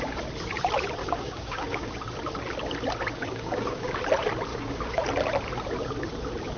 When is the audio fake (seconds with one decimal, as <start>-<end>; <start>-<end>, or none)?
1.0-1.9; 3.2-4.0; 4.5-5.0